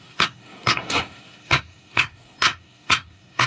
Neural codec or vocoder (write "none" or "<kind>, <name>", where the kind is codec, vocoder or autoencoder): codec, SNAC